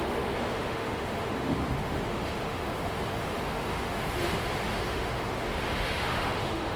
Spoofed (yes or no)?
yes